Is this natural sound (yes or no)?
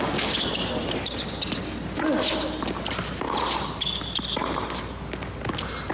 yes